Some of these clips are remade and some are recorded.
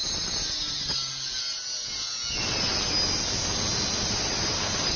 recorded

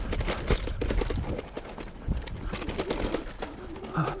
recorded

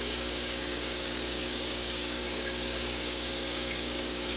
remade